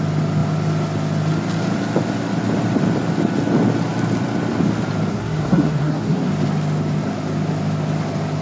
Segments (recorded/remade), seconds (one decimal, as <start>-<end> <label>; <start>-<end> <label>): 0.0-5.1 recorded; 5.1-6.3 remade; 6.3-8.4 recorded